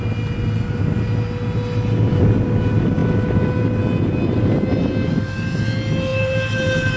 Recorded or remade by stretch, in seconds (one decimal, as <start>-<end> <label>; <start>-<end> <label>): 0.0-7.0 recorded